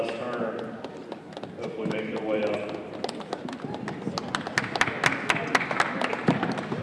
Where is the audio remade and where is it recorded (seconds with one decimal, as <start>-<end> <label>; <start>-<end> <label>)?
0.0-6.8 recorded